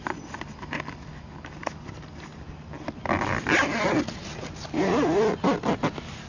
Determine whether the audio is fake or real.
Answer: real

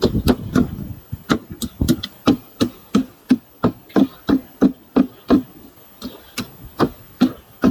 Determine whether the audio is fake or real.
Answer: real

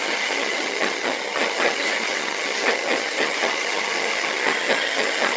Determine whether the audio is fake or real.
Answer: fake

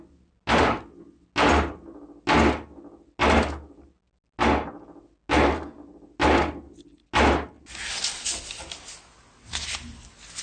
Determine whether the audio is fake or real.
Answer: real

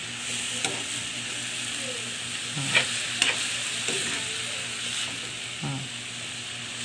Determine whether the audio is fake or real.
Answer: real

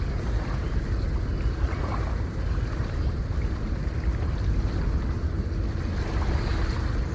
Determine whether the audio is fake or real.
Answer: real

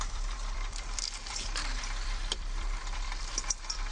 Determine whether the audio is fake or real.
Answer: fake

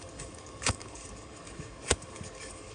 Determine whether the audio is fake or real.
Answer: fake